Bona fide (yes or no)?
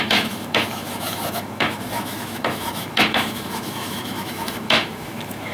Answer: no